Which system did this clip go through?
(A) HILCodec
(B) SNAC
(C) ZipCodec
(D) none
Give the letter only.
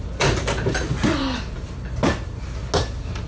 D